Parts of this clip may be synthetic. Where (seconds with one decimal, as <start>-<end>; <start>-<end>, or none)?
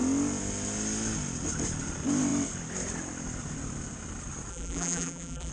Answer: 4.5-5.5